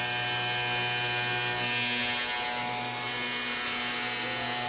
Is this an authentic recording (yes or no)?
yes